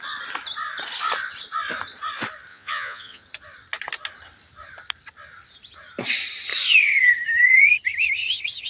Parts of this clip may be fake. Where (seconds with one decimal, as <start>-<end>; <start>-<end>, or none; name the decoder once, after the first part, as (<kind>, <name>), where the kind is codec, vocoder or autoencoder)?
2.5-3.2 (vocoder, Vocos)